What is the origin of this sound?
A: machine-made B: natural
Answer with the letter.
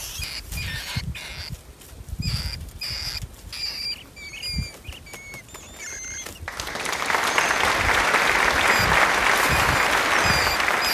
B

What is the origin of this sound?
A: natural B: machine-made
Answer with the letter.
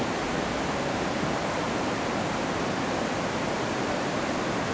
B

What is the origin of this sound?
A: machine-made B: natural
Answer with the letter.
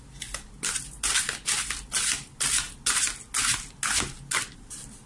B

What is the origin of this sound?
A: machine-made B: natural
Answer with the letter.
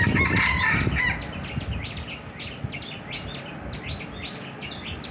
B